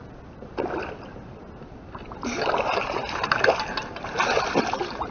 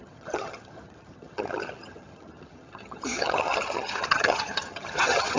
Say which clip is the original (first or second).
first